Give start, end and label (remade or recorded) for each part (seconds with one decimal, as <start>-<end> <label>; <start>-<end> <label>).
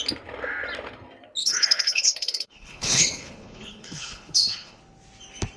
0.0-1.4 recorded; 1.4-4.8 remade; 4.8-5.6 recorded